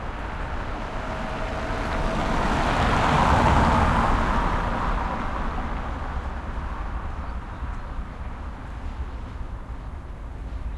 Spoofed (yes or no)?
no